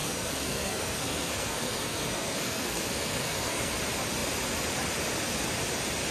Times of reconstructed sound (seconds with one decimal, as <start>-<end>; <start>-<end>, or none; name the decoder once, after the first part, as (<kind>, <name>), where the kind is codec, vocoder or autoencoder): 0.0-3.7 (codec, SNAC)